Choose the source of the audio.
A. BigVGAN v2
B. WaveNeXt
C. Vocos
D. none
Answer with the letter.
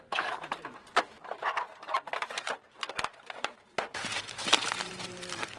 A